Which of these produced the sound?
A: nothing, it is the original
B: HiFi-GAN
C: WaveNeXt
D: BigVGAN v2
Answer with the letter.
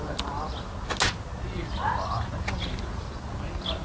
A